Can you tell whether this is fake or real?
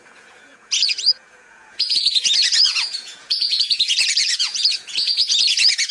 fake